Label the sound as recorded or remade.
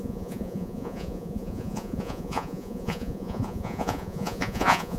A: remade